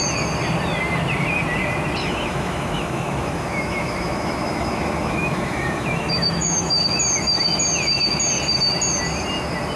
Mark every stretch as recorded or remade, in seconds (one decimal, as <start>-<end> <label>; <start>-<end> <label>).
0.0-2.0 recorded; 2.0-6.8 remade; 6.8-9.8 recorded